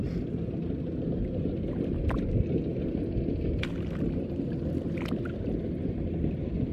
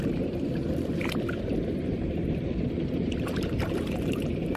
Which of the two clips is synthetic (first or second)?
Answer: second